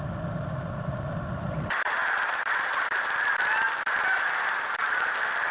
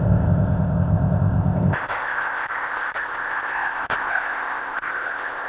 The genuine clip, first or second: first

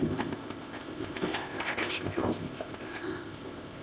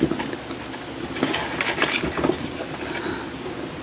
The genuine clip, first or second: second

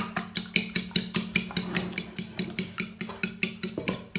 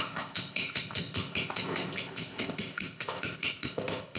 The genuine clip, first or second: first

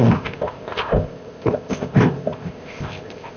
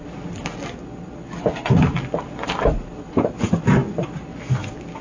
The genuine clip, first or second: second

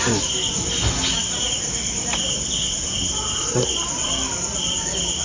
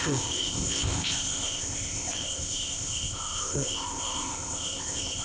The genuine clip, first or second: first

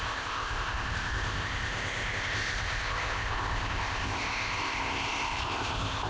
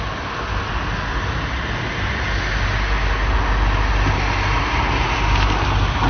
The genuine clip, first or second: second